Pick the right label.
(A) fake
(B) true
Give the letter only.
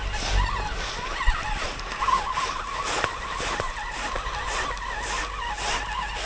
B